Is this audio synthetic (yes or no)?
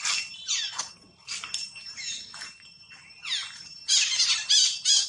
no